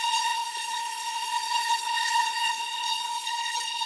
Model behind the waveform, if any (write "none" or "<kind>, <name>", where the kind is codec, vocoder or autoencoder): codec, HILCodec